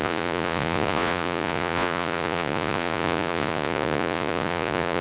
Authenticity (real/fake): fake